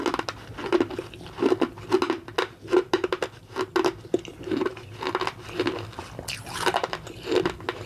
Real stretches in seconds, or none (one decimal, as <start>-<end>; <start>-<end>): 0.0-7.9